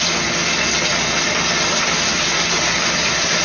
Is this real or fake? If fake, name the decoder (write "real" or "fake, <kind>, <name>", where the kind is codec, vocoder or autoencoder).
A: real